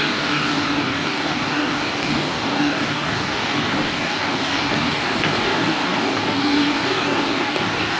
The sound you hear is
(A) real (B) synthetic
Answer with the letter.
B